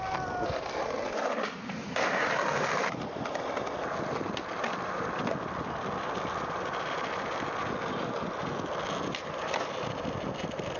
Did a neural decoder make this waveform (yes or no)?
no